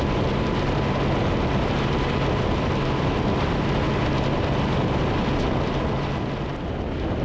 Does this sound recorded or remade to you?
recorded